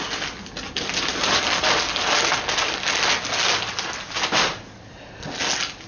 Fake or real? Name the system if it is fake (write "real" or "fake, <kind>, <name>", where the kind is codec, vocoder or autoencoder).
real